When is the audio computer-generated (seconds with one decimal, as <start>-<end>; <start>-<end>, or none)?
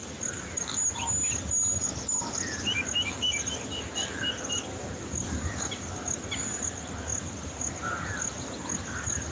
none